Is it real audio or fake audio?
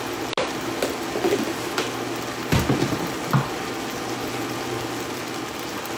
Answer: real